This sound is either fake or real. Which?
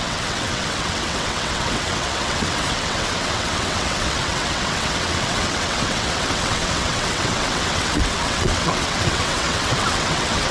fake